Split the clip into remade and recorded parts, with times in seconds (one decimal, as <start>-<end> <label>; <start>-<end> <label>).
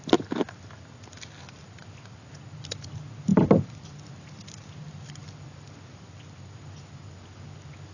0.0-3.3 recorded; 3.3-4.6 remade; 4.6-7.9 recorded